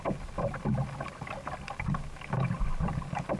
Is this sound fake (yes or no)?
no